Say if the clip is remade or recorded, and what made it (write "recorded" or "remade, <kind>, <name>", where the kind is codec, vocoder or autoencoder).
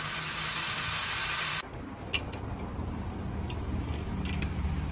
recorded